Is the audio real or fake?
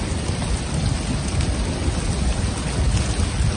real